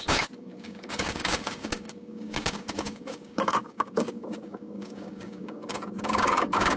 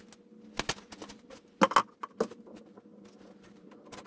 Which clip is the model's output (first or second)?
first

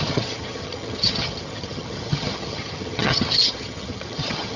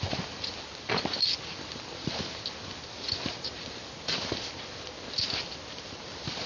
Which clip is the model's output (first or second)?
first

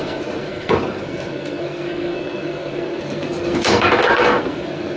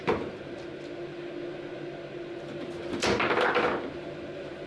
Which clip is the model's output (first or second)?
first